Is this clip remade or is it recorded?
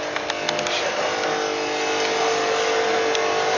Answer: recorded